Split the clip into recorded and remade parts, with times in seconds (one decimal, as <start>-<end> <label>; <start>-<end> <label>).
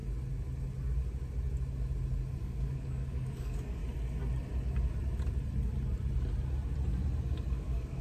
0.0-2.4 recorded; 2.4-3.8 remade; 3.8-7.5 recorded; 7.5-8.0 remade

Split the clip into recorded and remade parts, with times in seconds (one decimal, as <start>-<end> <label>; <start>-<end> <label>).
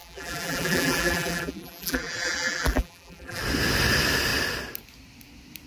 0.0-3.4 remade; 3.4-5.7 recorded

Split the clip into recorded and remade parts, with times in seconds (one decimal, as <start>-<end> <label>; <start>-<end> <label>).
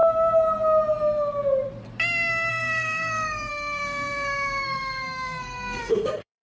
0.0-2.5 recorded; 2.5-6.4 remade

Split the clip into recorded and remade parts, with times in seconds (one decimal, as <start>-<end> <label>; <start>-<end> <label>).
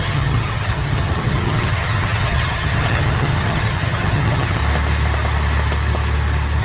0.0-4.6 remade; 4.6-6.6 recorded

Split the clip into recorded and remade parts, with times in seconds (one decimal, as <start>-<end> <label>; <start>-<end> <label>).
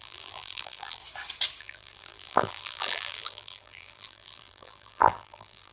0.0-1.0 remade; 1.0-1.6 recorded; 1.6-5.7 remade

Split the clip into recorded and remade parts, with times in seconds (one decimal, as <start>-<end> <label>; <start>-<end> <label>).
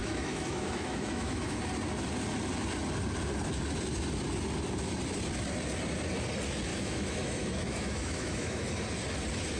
0.0-1.6 remade; 1.6-6.7 recorded; 6.7-8.7 remade; 8.7-9.6 recorded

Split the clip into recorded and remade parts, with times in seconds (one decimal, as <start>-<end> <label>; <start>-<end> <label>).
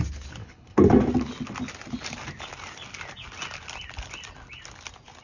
0.0-0.4 recorded; 0.4-0.9 remade; 0.9-5.2 recorded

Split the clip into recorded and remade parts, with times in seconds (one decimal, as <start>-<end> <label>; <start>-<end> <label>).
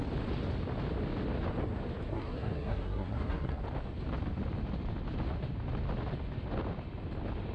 0.0-2.1 recorded; 2.1-3.6 remade; 3.6-7.5 recorded